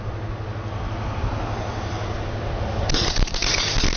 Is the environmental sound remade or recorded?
recorded